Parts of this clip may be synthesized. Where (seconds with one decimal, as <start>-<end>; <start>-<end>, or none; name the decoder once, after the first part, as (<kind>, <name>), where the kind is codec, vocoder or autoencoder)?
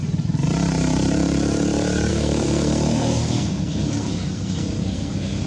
2.1-5.5 (codec, SNAC)